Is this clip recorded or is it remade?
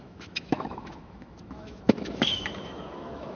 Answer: remade